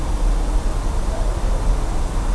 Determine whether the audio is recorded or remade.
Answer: recorded